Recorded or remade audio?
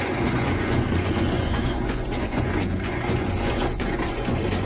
remade